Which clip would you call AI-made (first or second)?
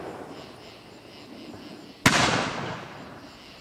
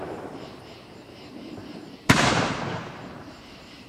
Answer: second